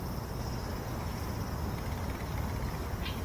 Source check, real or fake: real